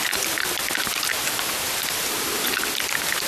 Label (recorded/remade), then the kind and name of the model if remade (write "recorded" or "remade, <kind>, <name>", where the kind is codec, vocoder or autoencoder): recorded